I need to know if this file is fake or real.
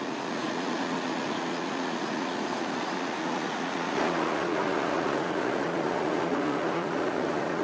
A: fake